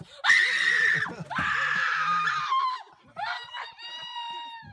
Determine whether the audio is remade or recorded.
recorded